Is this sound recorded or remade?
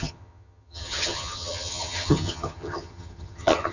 remade